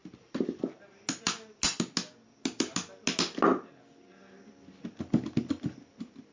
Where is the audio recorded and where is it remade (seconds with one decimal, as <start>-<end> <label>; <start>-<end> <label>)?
0.0-6.3 recorded

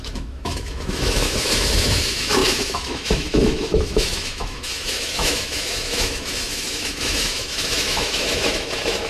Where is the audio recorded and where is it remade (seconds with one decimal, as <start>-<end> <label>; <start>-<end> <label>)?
0.0-9.1 remade